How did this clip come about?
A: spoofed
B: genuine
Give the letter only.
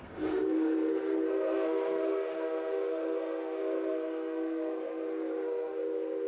A